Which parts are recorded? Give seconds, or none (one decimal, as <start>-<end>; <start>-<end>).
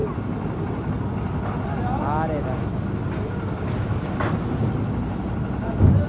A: 0.0-6.1